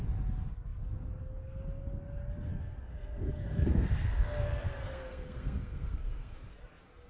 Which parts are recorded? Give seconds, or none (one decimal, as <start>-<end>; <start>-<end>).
0.0-2.5; 6.5-7.1

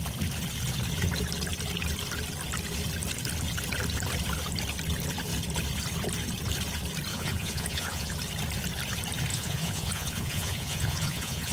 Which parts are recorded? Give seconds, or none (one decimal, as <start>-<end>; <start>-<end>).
0.0-7.1; 8.1-9.3

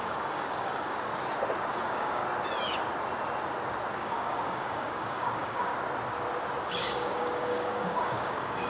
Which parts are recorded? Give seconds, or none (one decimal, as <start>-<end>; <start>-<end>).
1.1-1.7; 2.2-3.9; 5.7-6.7

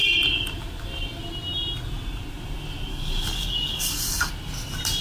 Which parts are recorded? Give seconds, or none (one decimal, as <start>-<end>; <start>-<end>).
0.0-2.9; 4.3-5.0

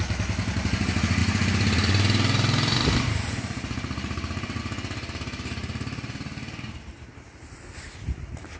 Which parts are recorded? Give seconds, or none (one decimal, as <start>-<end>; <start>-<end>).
0.0-1.2; 4.6-5.6; 6.9-8.6

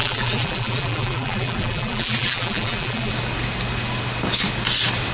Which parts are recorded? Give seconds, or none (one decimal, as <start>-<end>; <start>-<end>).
3.1-5.1